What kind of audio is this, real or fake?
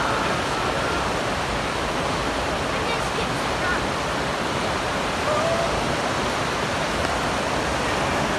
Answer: real